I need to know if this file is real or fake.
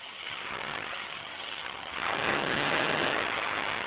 fake